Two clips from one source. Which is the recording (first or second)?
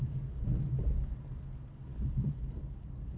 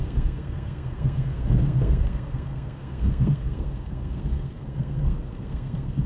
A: first